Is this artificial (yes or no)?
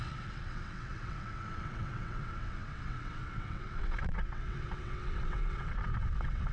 yes